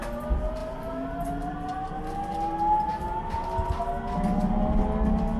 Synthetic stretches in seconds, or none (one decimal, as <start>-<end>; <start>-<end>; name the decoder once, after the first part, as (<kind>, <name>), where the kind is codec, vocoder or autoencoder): 0.6-3.8 (vocoder, BigVGAN v2)